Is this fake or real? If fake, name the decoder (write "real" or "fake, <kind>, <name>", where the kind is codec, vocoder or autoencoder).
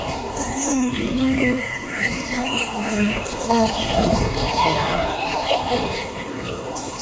fake, codec, SNAC